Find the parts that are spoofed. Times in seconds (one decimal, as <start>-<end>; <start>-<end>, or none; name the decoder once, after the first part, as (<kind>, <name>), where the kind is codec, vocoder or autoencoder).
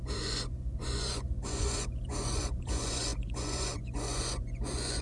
0.0-5.0 (vocoder, Vocos)